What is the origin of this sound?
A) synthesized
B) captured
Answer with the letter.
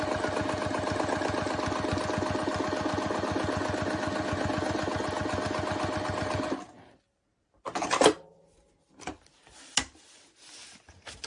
B